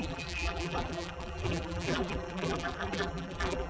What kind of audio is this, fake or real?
fake